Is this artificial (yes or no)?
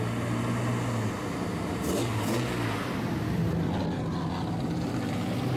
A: no